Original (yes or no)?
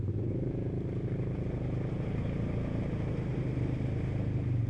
yes